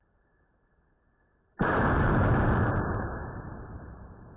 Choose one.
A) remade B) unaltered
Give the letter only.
B